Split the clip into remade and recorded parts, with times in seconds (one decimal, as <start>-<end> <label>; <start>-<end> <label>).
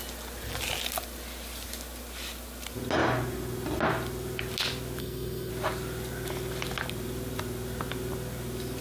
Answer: 0.0-5.0 recorded; 5.0-5.5 remade; 5.5-8.8 recorded